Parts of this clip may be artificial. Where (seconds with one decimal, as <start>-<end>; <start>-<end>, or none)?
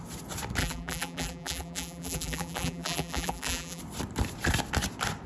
0.6-3.8